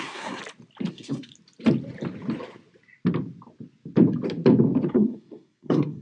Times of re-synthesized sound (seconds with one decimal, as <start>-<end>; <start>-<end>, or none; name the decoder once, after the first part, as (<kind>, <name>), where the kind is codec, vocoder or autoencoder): 0.0-0.4 (codec, SNAC); 0.9-1.3; 4.9-6.0